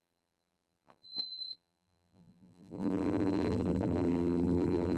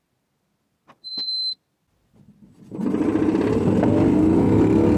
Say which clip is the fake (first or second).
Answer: first